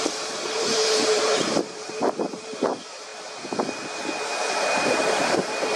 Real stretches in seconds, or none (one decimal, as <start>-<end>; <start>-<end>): 3.1-4.5